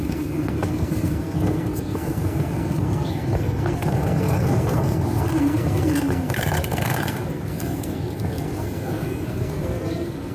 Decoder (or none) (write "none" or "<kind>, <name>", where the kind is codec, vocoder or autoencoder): codec, SNAC